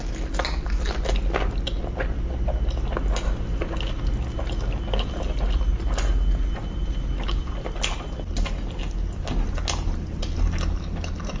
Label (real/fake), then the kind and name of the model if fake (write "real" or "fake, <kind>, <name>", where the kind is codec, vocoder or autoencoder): real